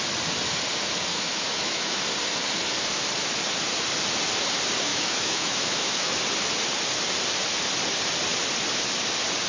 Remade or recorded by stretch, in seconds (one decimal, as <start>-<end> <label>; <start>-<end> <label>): 0.0-1.1 recorded; 1.1-2.0 remade; 2.0-4.9 recorded; 4.9-6.2 remade; 6.2-9.5 recorded